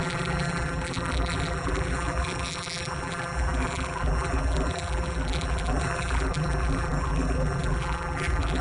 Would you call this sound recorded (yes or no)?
no